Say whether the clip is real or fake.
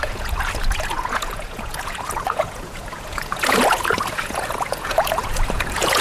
fake